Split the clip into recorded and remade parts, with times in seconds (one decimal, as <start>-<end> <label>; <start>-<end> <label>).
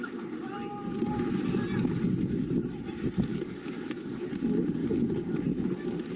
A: 0.0-3.3 recorded; 3.3-4.3 remade; 4.3-4.8 recorded; 4.8-5.4 remade; 5.4-6.2 recorded